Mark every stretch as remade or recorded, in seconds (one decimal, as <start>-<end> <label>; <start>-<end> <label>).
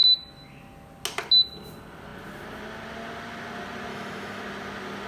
0.0-3.9 recorded; 3.9-4.4 remade; 4.4-5.1 recorded